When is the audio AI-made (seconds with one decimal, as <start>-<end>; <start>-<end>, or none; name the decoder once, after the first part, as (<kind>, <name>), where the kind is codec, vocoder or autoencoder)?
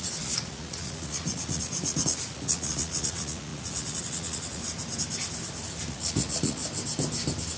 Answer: 0.0-4.6 (vocoder, Vocos); 5.9-6.6